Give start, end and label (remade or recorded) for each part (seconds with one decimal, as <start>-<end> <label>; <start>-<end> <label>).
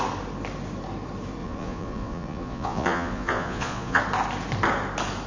0.0-1.4 recorded; 1.4-4.0 remade; 4.0-5.3 recorded